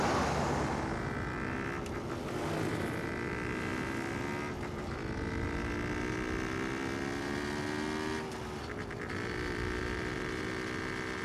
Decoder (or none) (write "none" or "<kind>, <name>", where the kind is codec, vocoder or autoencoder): none